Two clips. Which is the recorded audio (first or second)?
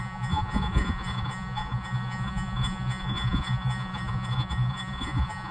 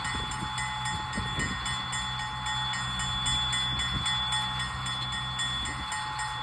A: second